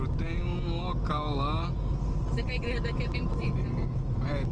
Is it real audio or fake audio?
real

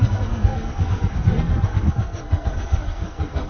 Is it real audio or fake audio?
fake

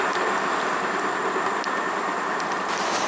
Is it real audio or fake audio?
real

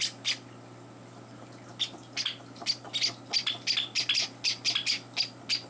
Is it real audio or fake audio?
real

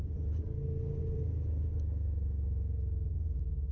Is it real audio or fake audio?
real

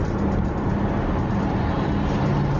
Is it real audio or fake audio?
real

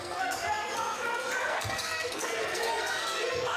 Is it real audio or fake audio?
fake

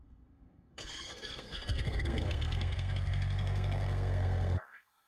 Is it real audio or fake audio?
fake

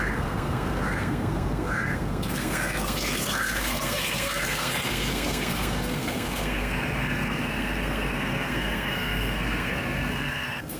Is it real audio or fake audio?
fake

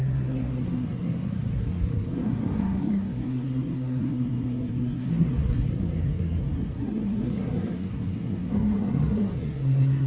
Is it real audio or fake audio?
fake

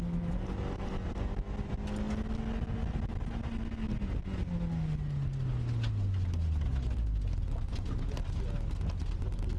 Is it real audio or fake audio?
real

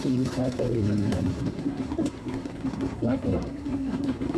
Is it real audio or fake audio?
fake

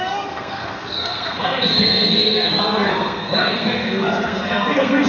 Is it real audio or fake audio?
fake